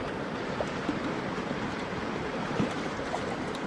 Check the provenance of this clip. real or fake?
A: fake